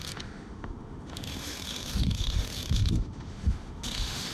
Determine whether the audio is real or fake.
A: fake